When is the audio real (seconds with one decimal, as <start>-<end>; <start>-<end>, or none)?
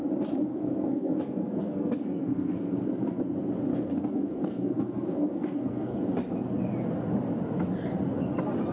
0.0-0.5; 3.2-3.7; 6.0-8.7